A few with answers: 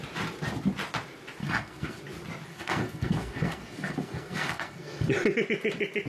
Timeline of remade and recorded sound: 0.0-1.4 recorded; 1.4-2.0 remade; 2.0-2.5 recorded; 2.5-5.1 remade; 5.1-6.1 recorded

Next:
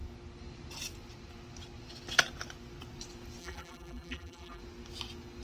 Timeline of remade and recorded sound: 0.0-3.4 recorded; 3.4-4.6 remade; 4.6-5.4 recorded

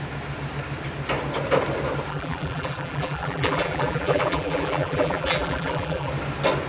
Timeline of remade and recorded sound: 0.0-2.1 recorded; 2.1-6.1 remade; 6.1-6.7 recorded

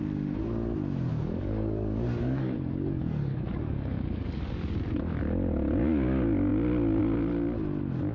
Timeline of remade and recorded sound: 0.0-1.1 recorded; 1.1-4.8 remade; 4.8-8.1 recorded

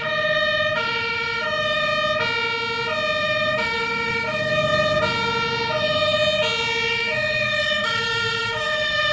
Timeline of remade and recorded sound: 0.0-1.9 remade; 1.9-3.2 recorded; 3.2-4.7 remade; 4.7-5.8 recorded; 5.8-6.2 remade; 6.2-6.9 recorded; 6.9-9.1 remade

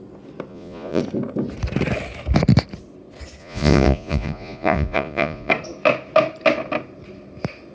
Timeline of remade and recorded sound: 0.0-0.5 recorded; 0.5-1.0 remade; 1.0-3.4 recorded; 3.4-5.5 remade; 5.5-7.7 recorded

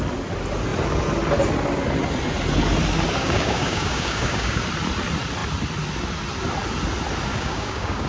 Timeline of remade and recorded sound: 0.0-3.2 recorded; 3.2-4.6 remade; 4.6-7.3 recorded; 7.3-8.1 remade